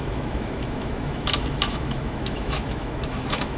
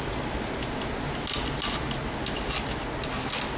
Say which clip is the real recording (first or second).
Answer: second